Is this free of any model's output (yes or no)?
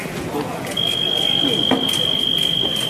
yes